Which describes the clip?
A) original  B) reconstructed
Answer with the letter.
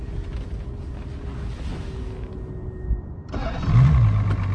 A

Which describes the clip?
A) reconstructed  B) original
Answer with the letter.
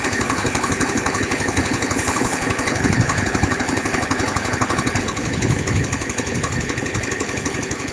A